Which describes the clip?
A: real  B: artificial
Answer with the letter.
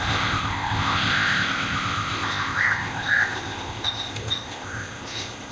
B